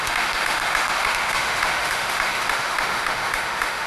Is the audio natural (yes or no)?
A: no